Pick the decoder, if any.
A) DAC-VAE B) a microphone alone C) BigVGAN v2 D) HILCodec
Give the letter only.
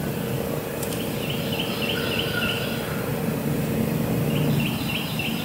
B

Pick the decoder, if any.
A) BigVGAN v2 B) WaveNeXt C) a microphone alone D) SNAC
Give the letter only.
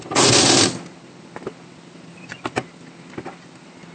C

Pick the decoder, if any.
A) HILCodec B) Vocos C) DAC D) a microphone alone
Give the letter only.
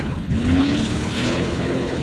A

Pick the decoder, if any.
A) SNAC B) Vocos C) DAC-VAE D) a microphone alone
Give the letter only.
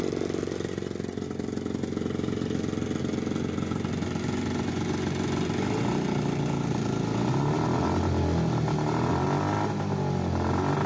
D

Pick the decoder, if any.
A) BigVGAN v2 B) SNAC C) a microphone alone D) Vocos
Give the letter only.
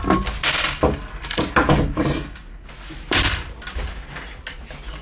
C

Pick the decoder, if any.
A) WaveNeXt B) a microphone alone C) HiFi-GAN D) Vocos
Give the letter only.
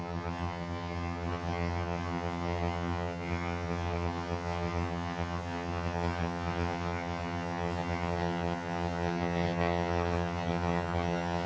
C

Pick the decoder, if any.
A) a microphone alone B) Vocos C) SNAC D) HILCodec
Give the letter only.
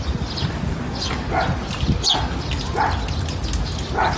A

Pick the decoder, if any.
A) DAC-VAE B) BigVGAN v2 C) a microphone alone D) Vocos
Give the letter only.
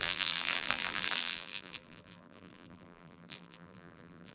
B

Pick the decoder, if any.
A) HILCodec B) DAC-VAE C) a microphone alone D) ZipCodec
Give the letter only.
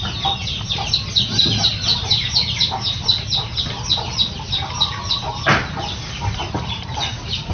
C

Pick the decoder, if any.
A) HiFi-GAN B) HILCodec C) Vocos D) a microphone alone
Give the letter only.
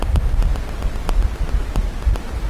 D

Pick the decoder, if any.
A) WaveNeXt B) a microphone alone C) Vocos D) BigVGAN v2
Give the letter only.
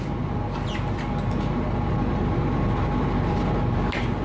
B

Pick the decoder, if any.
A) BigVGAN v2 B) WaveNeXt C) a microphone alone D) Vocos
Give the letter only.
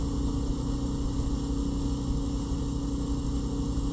C